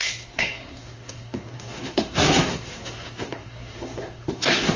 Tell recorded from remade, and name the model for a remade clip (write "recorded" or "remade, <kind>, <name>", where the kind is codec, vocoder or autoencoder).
remade, codec, SNAC